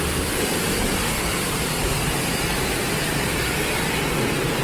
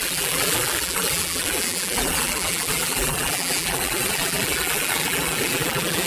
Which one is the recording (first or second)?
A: first